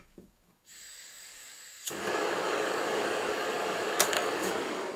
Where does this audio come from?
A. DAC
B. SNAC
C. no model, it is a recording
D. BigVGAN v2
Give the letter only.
A